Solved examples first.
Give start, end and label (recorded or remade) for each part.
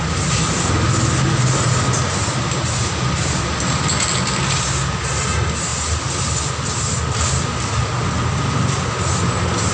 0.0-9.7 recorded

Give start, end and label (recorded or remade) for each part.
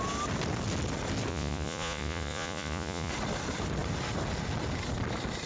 0.0-1.3 recorded; 1.3-3.1 remade; 3.1-5.5 recorded